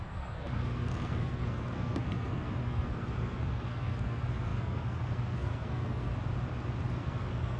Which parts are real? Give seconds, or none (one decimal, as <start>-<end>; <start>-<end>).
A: 6.1-6.9